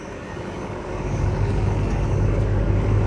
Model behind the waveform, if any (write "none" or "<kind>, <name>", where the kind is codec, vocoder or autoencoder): codec, DAC